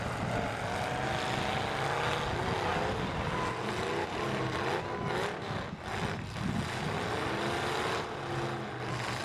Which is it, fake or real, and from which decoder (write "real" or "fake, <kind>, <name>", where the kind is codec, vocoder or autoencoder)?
real